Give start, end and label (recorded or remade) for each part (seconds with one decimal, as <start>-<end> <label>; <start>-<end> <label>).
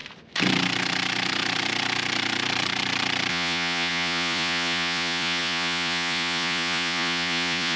0.0-3.3 recorded; 3.3-7.8 remade